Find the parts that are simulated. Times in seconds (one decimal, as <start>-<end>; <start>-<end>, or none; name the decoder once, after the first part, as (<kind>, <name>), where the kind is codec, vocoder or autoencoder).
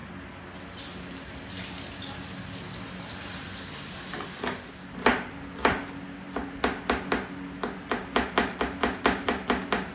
none